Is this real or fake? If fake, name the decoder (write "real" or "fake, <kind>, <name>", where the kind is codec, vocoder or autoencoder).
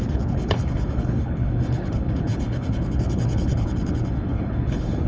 fake, codec, HILCodec